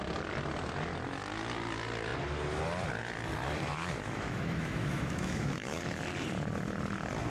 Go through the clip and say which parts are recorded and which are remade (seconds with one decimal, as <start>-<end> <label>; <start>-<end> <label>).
0.0-3.7 recorded; 3.7-6.0 remade; 6.0-7.3 recorded